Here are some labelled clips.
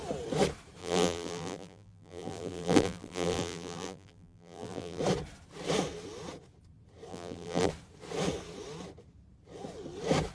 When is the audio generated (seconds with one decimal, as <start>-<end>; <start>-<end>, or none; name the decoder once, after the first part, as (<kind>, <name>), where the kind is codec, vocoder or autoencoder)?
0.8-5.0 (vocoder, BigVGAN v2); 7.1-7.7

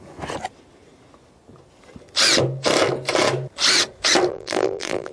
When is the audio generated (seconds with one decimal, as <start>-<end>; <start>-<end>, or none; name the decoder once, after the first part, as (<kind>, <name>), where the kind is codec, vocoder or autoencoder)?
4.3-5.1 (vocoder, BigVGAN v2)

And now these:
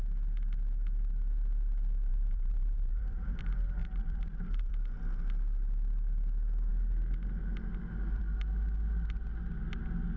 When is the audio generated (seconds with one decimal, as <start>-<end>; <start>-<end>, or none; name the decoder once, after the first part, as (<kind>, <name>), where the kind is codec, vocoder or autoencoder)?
2.1-3.4 (vocoder, BigVGAN v2); 3.8-4.7

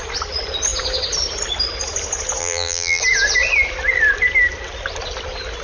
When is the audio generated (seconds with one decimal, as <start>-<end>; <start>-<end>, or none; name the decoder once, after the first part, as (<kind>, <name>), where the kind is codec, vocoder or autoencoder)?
2.4-3.0 (vocoder, BigVGAN v2)

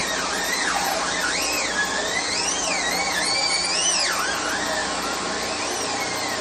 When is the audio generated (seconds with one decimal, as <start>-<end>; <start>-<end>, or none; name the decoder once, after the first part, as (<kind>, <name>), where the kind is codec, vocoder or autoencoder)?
0.0-1.3 (vocoder, BigVGAN v2)